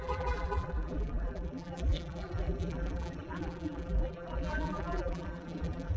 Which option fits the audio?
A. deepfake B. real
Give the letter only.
A